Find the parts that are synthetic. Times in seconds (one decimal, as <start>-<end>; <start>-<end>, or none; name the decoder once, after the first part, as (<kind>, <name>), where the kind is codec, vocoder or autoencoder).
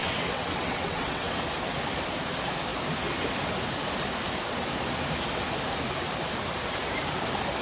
0.0-1.4 (vocoder, WaveNeXt)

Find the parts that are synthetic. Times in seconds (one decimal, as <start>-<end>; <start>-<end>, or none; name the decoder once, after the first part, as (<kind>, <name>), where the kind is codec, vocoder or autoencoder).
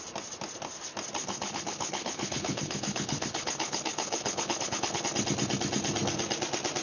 1.2-5.0 (codec, HILCodec)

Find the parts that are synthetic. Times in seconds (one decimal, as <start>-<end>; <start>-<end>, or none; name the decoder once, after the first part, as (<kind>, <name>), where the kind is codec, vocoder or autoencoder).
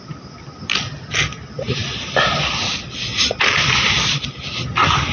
none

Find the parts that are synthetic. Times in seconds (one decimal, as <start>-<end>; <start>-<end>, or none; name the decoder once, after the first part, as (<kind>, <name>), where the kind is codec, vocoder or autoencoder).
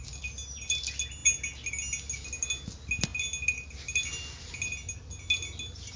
none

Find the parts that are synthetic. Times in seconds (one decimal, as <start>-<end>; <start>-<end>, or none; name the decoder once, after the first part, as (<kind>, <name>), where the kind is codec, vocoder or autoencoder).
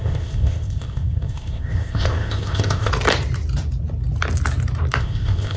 0.0-2.9 (codec, ZipCodec); 5.0-5.6